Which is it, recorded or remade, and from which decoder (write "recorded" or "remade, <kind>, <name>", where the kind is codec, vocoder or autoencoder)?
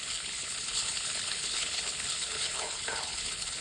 remade, codec, HILCodec